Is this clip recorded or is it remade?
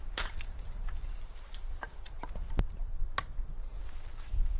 recorded